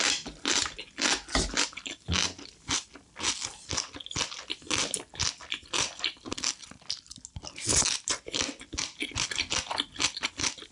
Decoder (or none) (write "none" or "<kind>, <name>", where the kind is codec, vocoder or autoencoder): none